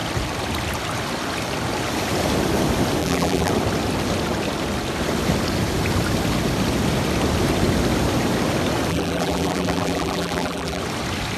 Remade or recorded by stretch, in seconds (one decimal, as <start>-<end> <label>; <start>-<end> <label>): 0.0-3.0 recorded; 3.0-3.5 remade; 3.5-8.9 recorded; 8.9-10.8 remade; 10.8-11.4 recorded